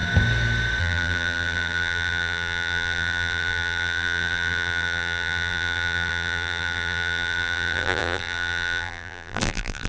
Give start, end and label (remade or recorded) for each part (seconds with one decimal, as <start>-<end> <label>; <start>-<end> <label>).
0.0-0.8 recorded; 0.8-9.9 remade